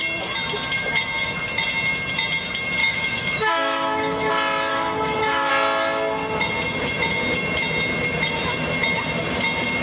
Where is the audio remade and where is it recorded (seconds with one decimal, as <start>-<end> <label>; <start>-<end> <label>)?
0.0-2.8 recorded; 2.8-4.3 remade; 4.3-4.7 recorded; 4.7-5.5 remade; 5.5-9.8 recorded